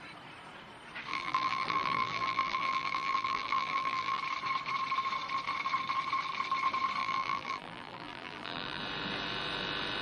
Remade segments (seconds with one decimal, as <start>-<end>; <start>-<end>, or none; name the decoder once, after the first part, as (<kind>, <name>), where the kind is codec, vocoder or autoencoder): 1.1-4.2 (vocoder, BigVGAN v2); 7.0-8.8